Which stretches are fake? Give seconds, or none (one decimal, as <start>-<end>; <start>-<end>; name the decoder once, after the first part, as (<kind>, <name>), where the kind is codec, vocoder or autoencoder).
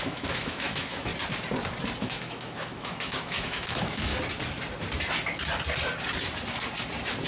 0.0-1.1 (autoencoder, DAC-VAE); 2.0-4.1